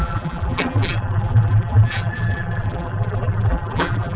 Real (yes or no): no